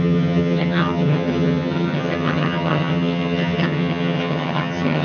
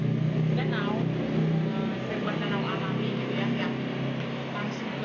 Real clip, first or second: second